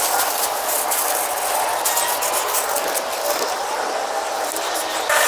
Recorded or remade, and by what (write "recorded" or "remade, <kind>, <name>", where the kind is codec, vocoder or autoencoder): recorded